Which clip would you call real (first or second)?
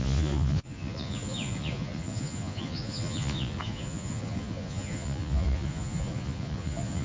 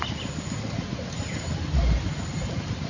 second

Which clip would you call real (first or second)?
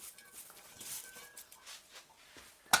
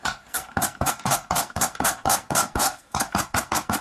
first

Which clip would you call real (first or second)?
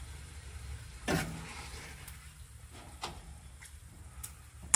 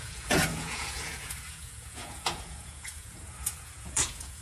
first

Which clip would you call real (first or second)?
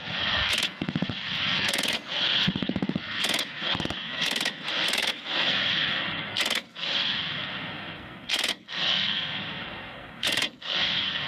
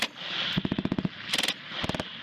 second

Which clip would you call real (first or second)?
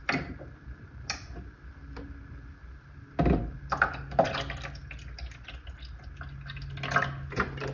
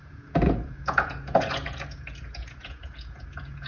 first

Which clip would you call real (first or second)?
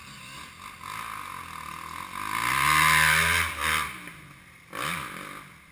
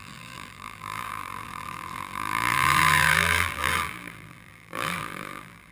first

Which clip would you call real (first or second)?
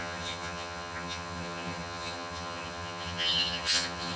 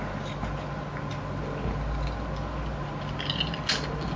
second